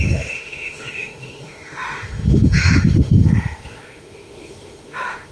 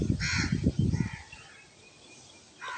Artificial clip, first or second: first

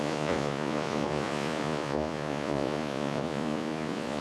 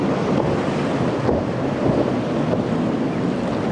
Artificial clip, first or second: first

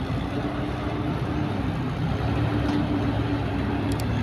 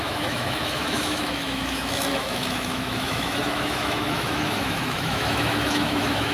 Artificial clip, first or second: second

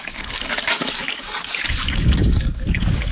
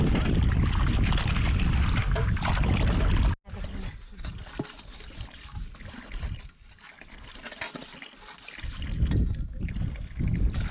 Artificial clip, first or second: first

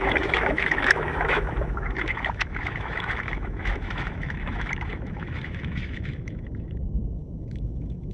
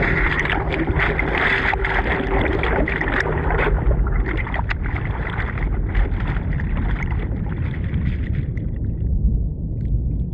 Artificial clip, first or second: first